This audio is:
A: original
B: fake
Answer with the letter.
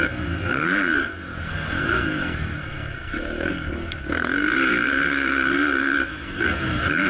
B